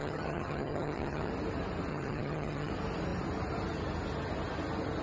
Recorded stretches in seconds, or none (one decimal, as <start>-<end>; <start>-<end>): 1.3-1.9; 2.7-5.0